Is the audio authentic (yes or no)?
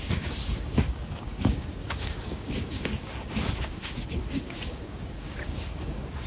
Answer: no